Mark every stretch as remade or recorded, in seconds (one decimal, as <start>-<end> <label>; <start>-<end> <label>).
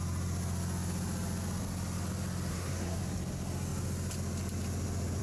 0.0-2.5 recorded; 2.5-3.0 remade; 3.0-5.2 recorded